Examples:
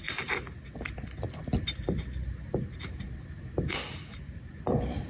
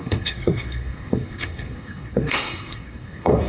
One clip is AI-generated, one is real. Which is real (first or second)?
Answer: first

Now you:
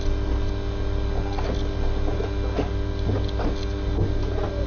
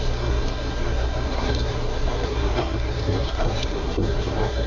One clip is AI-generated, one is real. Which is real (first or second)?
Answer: first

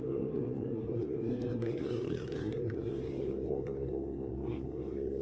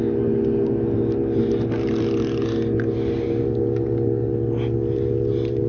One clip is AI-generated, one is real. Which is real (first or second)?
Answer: second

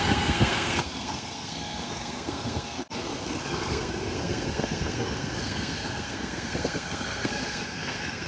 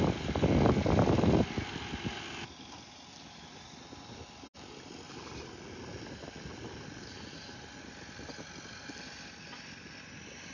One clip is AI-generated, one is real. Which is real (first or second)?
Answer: second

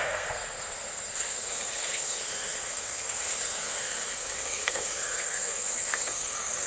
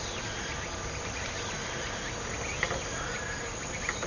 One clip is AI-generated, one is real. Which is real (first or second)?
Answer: second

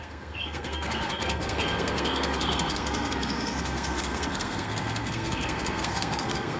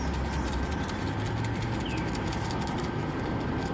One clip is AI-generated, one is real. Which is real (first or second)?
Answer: second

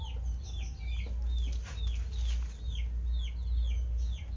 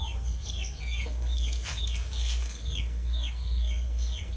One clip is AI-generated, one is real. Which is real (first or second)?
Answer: first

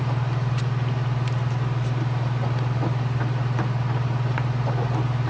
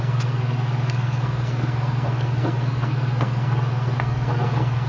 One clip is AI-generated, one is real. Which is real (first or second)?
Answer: first